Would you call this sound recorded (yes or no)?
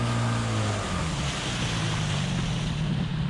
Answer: yes